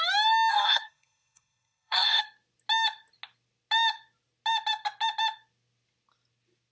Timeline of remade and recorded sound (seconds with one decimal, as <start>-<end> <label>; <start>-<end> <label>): 0.0-0.5 recorded; 0.5-2.2 remade; 2.2-6.7 recorded